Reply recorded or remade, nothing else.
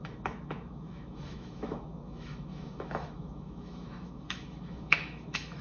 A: remade